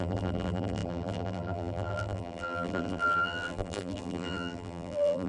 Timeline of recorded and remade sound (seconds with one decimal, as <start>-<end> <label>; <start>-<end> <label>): 0.0-5.3 remade